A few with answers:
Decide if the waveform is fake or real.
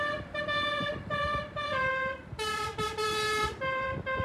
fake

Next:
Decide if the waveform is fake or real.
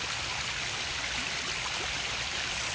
real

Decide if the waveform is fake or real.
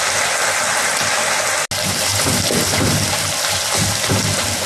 real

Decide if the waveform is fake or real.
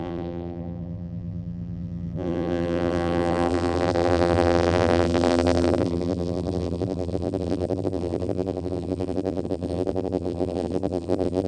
fake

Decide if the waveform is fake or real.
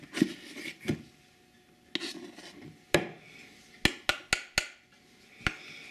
real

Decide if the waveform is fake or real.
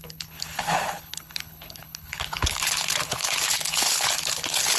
fake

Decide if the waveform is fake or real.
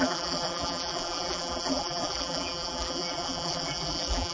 fake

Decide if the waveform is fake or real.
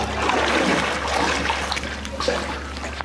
real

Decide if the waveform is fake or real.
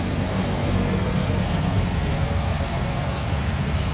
fake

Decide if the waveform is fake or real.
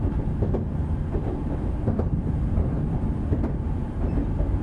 real